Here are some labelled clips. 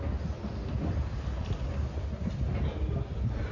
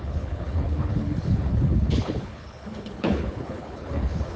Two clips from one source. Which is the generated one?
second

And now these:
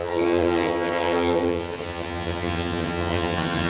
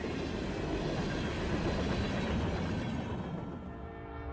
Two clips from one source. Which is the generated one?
first